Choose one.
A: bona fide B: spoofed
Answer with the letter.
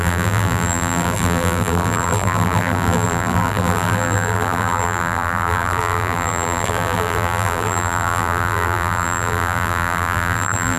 B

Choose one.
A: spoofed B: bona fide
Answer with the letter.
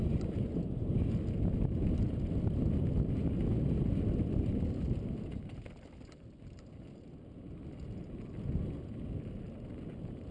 B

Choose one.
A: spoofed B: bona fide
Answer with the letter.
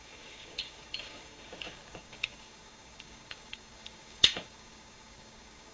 A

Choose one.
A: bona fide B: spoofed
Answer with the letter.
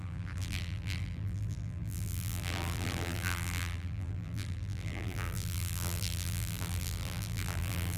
B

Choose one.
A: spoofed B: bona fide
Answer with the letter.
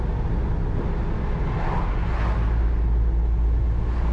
B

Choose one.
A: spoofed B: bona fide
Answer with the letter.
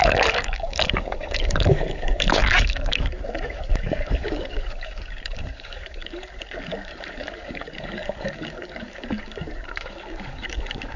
A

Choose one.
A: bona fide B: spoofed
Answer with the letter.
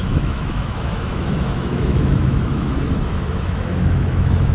B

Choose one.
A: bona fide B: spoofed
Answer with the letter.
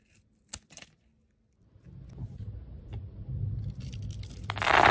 A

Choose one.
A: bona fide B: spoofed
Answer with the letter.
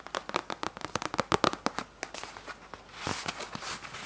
A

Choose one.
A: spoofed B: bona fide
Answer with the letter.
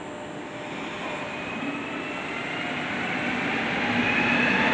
B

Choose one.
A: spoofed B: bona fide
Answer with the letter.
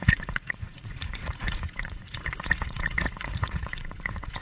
A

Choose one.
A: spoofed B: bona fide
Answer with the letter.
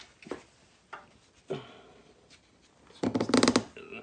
B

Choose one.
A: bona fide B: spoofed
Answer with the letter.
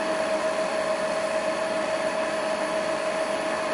A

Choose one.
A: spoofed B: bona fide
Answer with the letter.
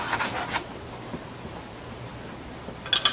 B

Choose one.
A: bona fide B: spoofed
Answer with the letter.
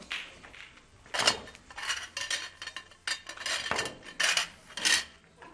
A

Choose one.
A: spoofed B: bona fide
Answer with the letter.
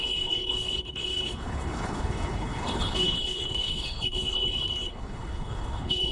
A